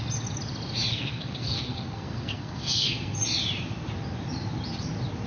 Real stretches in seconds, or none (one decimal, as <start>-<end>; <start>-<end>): 0.0-0.9; 3.2-5.3